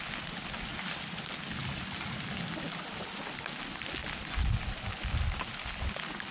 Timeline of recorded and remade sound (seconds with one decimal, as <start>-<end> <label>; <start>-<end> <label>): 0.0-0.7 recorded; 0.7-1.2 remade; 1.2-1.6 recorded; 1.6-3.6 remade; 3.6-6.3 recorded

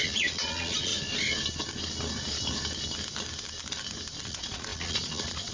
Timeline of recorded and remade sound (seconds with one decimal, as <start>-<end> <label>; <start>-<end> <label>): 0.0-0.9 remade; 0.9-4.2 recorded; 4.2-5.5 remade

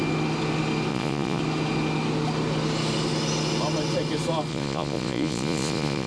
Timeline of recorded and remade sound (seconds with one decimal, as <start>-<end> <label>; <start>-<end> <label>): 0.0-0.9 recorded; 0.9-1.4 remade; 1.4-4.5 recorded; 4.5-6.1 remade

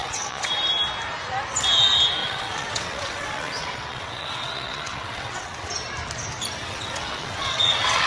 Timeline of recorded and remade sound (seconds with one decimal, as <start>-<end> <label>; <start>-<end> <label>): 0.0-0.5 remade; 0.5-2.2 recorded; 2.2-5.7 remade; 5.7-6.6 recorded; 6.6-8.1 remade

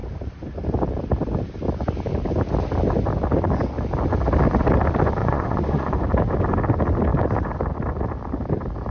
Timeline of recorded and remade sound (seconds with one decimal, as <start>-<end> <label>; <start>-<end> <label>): 0.0-5.2 recorded; 5.2-6.0 remade; 6.0-8.9 recorded